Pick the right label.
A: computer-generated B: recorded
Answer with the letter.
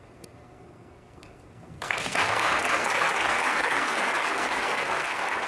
A